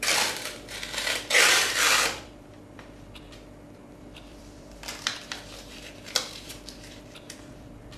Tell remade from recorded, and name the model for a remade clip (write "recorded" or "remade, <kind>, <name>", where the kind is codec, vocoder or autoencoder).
remade, vocoder, BigVGAN v2